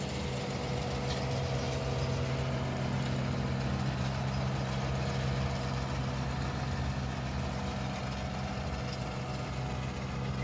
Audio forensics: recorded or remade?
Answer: recorded